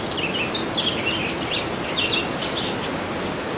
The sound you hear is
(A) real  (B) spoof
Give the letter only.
A